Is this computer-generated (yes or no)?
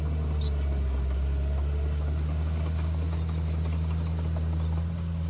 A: no